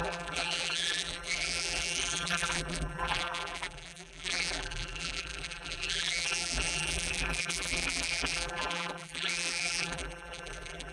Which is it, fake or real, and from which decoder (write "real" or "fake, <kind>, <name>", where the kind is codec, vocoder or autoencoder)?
fake, vocoder, BigVGAN v2